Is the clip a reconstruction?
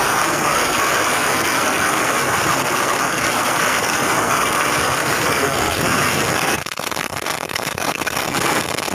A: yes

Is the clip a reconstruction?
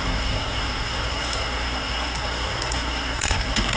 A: yes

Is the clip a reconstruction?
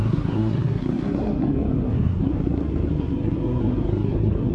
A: yes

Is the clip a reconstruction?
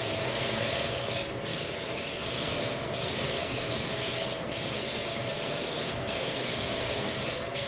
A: yes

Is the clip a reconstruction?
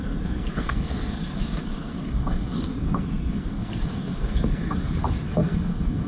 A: yes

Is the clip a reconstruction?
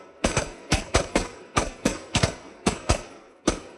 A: yes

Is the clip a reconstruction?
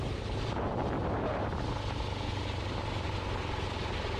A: no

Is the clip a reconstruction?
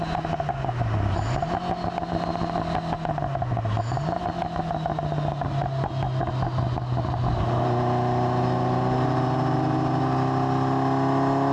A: no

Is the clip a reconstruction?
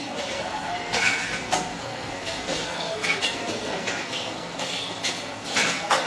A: yes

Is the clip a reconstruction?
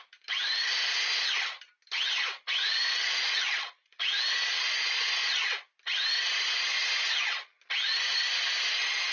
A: no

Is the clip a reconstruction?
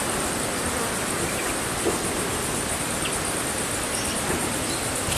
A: no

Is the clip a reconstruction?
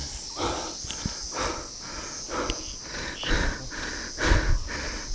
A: no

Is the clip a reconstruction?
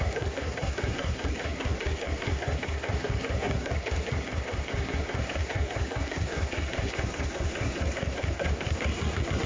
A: yes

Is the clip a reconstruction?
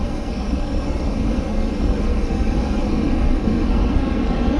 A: yes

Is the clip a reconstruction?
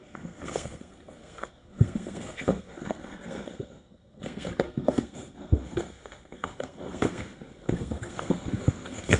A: yes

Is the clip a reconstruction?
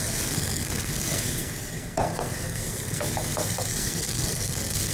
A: yes